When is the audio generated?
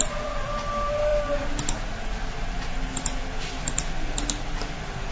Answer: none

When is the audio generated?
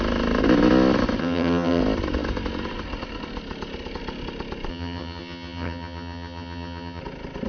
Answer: 1.2-1.8; 4.7-7.0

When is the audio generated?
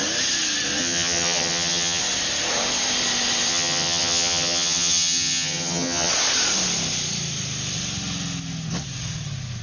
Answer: 0.8-2.0; 3.5-6.1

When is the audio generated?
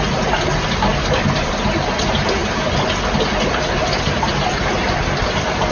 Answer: none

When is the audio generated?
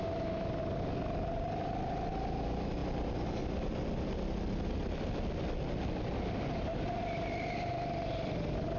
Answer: none